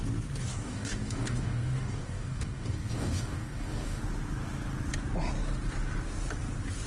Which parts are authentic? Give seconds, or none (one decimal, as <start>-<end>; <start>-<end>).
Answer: 0.0-0.5; 4.0-6.9